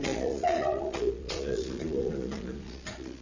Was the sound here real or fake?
fake